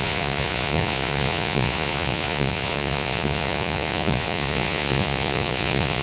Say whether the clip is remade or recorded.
remade